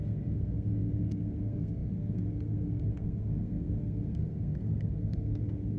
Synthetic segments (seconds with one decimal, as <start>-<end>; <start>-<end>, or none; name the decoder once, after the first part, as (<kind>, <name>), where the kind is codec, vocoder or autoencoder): 0.0-5.8 (codec, SNAC)